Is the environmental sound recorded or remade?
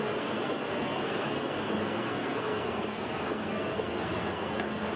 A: remade